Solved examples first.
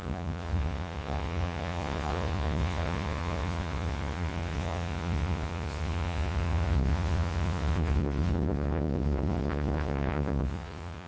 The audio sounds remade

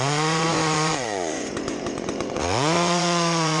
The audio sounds remade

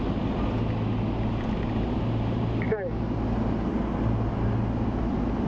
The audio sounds recorded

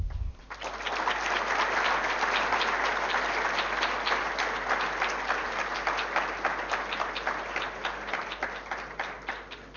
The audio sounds recorded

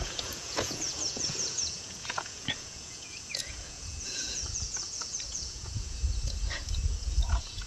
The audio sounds remade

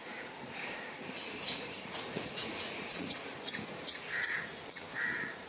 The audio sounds remade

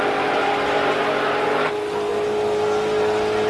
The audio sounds recorded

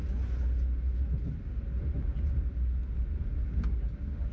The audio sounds recorded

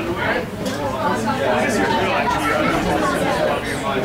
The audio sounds recorded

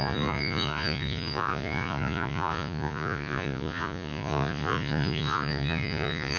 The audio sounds remade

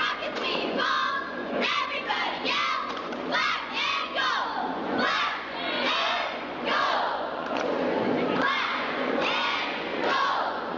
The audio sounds remade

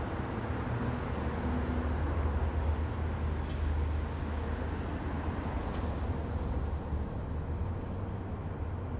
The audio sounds recorded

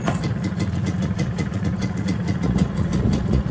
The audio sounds remade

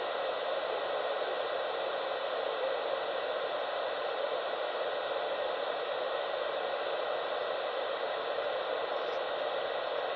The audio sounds recorded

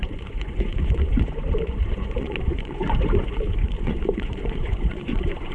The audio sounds remade